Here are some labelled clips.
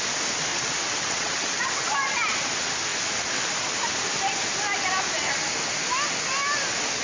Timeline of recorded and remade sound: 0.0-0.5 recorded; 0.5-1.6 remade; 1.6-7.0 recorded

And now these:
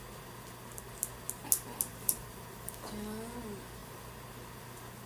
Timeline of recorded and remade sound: 0.0-1.9 recorded; 1.9-2.9 remade; 2.9-5.1 recorded

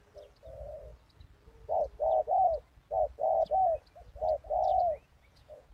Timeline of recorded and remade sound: 0.0-4.7 recorded; 4.7-5.7 remade

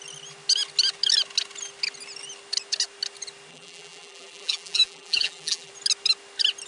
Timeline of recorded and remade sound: 0.0-3.5 recorded; 3.5-5.7 remade; 5.7-6.7 recorded

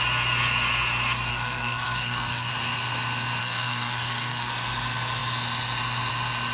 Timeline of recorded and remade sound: 0.0-1.3 recorded; 1.3-2.5 remade; 2.5-3.4 recorded; 3.4-4.5 remade; 4.5-6.5 recorded